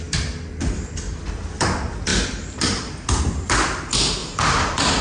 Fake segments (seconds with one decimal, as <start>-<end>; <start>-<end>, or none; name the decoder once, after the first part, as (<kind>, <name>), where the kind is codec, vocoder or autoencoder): 2.1-3.5 (vocoder, BigVGAN v2); 4.2-5.0